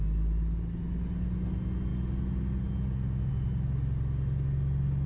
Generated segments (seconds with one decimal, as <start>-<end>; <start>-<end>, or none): none